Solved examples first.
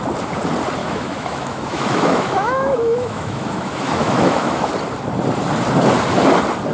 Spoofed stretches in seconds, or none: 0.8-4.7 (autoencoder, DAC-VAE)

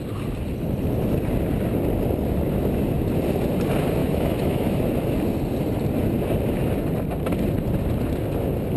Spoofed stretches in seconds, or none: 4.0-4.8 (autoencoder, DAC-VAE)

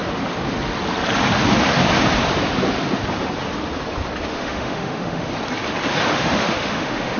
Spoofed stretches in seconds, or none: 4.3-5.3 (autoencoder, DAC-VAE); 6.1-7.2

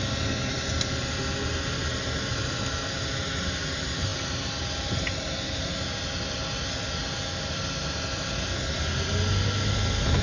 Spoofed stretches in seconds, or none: none

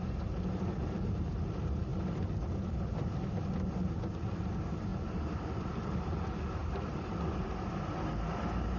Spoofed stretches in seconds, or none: none